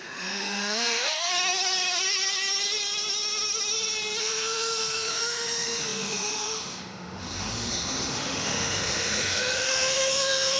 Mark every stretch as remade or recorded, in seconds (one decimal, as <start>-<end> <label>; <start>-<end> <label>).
0.0-1.3 remade; 1.3-4.2 recorded; 4.2-10.6 remade